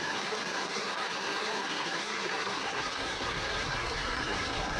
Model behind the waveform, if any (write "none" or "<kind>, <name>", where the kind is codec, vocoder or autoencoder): codec, SNAC